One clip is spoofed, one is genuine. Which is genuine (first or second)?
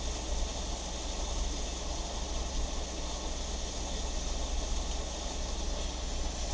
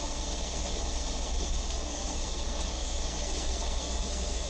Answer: first